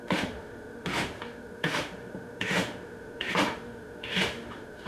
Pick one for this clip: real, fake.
fake